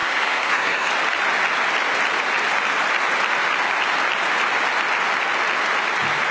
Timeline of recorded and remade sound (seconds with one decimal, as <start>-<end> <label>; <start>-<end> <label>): 0.0-0.9 remade; 0.9-6.3 recorded